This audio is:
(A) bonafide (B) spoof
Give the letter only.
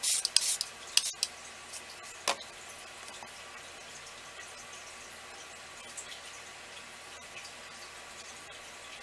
A